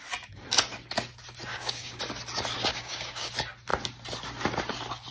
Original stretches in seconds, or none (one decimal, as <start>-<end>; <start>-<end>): 0.0-1.5; 2.0-2.7; 3.3-5.1

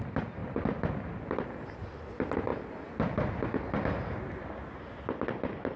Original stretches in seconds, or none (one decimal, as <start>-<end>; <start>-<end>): 0.0-5.8

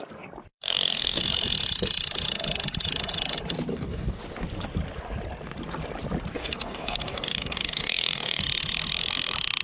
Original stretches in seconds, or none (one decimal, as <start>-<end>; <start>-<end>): 0.0-0.5; 1.2-3.7; 4.2-6.3; 8.4-9.6

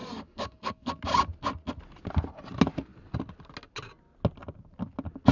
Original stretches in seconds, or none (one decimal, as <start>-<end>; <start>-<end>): 0.9-5.3